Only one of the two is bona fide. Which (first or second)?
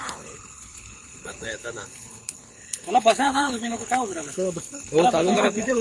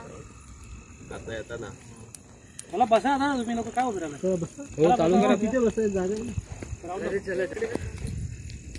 second